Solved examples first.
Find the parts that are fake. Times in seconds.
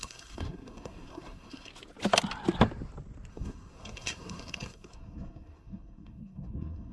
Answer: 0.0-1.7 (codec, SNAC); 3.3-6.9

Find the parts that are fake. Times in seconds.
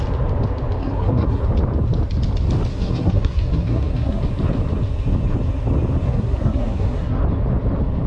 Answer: 0.8-1.4 (codec, SNAC); 2.7-4.2; 6.0-7.2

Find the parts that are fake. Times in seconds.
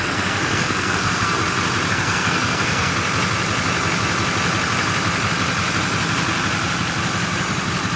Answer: 0.0-1.4 (codec, SNAC); 1.9-2.9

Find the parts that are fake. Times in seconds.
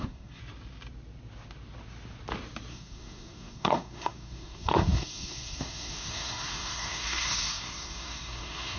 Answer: 0.0-0.4 (codec, SNAC); 2.7-8.8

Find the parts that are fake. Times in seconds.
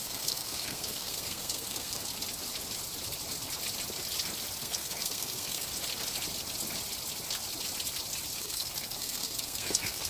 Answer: 0.0-2.1 (codec, SNAC); 4.6-5.7; 8.4-10.1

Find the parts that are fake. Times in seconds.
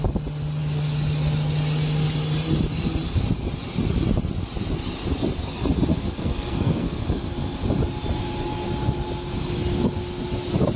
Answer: 5.9-7.3 (codec, SNAC)